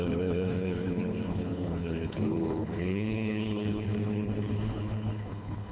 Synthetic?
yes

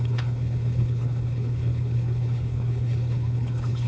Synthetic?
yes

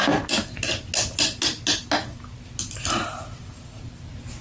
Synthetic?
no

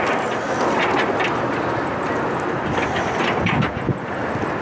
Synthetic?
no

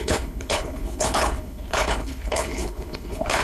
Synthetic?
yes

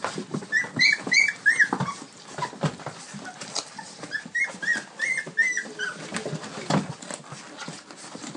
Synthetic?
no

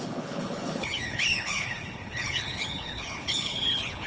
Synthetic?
yes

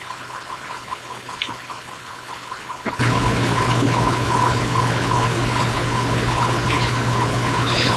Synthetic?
yes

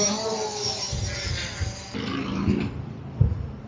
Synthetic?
no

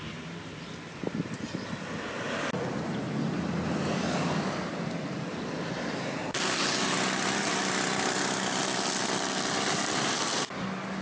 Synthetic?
no